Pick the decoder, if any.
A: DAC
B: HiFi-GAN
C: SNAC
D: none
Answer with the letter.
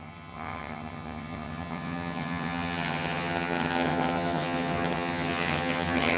B